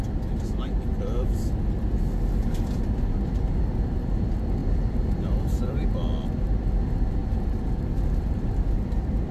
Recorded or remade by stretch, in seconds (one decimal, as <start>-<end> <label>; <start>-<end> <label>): 0.0-4.6 recorded; 4.6-5.7 remade; 5.7-9.3 recorded